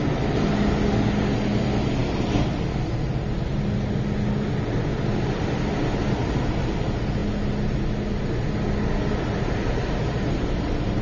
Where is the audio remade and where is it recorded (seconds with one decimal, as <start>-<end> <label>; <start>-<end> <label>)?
0.0-11.0 recorded